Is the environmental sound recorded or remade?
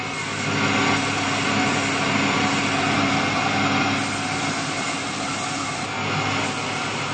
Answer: recorded